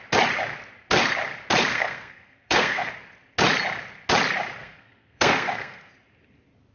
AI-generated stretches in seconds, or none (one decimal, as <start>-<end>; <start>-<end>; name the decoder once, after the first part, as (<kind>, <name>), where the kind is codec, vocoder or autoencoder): 1.7-2.9 (codec, SNAC); 4.6-5.9